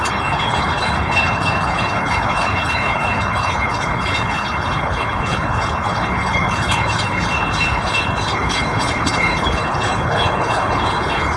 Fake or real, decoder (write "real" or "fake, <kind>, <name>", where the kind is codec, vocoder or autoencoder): fake, codec, HILCodec